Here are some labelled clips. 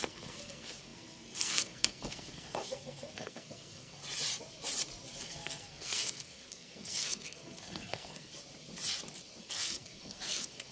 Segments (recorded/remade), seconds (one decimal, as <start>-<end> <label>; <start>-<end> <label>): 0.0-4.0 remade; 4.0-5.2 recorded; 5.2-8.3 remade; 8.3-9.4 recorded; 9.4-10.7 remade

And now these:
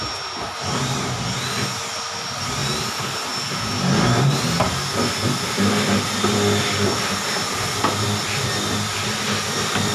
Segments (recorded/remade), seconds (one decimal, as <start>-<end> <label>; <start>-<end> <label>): 0.0-9.9 recorded

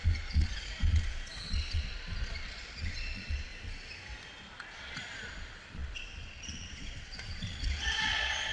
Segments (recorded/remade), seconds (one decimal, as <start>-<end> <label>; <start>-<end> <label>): 0.0-3.5 remade; 3.5-4.3 recorded; 4.3-8.5 remade

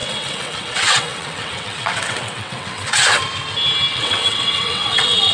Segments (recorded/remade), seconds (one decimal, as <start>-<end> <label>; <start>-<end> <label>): 0.0-3.2 remade; 3.2-3.9 recorded; 3.9-5.3 remade

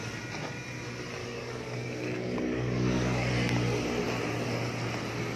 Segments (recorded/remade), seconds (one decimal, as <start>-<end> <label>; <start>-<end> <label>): 0.0-1.2 recorded; 1.2-3.3 remade; 3.3-5.4 recorded

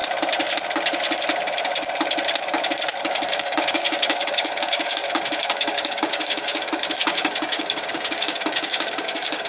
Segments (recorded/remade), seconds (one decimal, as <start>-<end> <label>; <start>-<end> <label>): 0.0-3.0 recorded; 3.0-9.5 remade